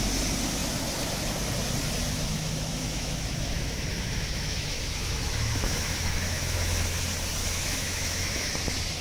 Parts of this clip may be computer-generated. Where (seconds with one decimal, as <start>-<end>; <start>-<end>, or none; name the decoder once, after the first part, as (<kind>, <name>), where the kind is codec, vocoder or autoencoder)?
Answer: 2.0-7.0 (autoencoder, DAC-VAE); 7.4-8.5